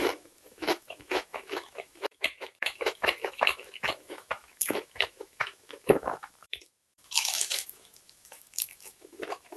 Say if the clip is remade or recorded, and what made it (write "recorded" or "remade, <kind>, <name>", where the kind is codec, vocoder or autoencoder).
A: remade, autoencoder, DAC-VAE